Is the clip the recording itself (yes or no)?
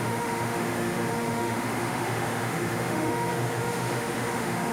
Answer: no